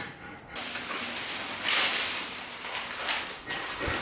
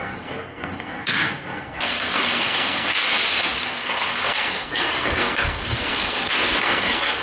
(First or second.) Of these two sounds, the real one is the first